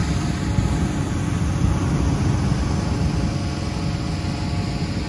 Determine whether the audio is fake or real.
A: real